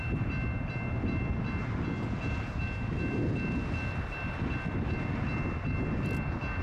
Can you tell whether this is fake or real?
real